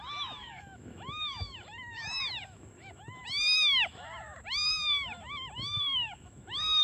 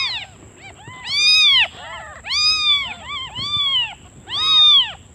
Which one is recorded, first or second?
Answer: second